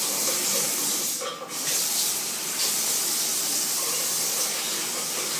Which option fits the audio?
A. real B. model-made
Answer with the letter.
A